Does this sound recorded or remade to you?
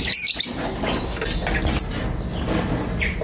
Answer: recorded